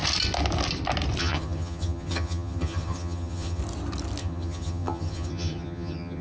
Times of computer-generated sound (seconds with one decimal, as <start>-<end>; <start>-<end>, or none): 1.2-3.6; 4.2-6.2